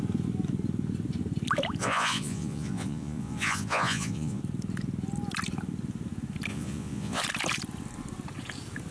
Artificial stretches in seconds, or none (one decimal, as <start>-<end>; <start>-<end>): 1.8-4.4; 6.5-7.2